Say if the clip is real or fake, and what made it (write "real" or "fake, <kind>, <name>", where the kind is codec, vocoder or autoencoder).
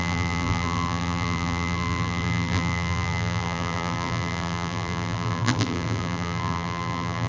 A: fake, vocoder, BigVGAN v2